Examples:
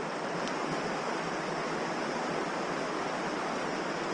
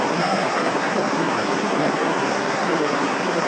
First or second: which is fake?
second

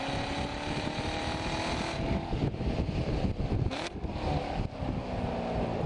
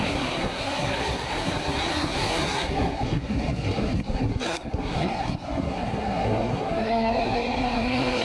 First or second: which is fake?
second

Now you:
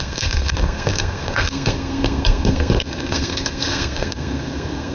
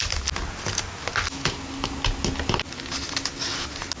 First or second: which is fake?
first